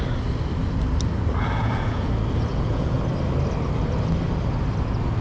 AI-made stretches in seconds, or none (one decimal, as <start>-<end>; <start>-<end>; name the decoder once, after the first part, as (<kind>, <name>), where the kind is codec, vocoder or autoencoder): 1.6-2.1 (vocoder, Vocos); 2.5-3.0